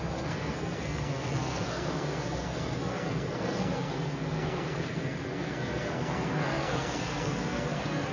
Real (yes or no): no